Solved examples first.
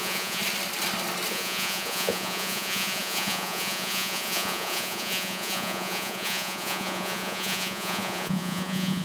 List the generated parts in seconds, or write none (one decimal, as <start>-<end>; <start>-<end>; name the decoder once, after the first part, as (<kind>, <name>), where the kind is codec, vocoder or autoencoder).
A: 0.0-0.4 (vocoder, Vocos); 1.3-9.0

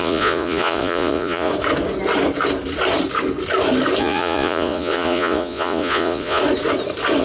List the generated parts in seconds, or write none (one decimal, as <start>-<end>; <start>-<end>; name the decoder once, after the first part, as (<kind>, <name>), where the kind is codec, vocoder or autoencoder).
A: 0.0-1.5 (vocoder, Vocos); 4.0-6.4

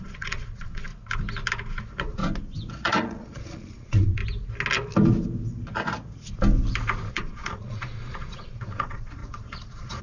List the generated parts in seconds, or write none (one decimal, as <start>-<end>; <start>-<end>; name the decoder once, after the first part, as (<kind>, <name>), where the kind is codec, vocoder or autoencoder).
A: 0.0-0.9 (vocoder, Vocos); 1.8-2.2; 2.7-4.2; 7.1-10.0

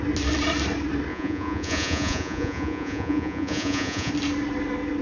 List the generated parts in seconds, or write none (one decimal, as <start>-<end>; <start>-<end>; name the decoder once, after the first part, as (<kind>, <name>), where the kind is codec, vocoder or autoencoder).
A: 1.1-4.1 (vocoder, Vocos)